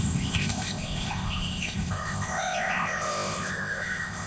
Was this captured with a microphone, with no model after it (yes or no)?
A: no